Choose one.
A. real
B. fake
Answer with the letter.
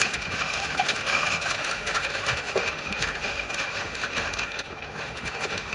B